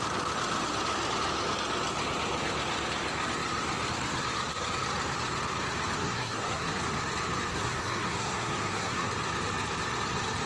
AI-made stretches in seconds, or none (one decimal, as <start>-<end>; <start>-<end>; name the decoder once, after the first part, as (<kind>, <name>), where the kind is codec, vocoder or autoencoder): 6.0-6.8 (codec, SNAC); 7.5-9.1